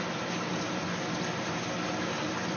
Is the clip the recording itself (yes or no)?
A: yes